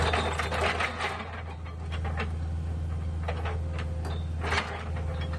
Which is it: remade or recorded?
recorded